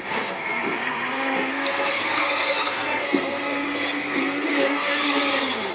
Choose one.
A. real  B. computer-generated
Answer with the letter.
B